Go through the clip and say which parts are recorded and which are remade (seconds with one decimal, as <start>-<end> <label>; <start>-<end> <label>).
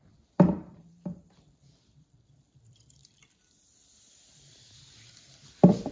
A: 0.0-5.9 remade